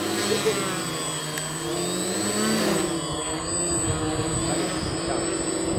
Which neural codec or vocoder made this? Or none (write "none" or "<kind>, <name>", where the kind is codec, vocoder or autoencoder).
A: none